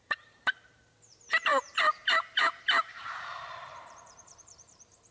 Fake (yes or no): yes